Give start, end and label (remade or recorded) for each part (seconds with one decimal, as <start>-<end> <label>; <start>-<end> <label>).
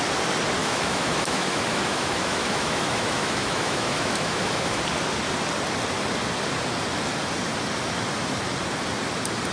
0.0-0.6 recorded; 0.6-4.8 remade; 4.8-9.5 recorded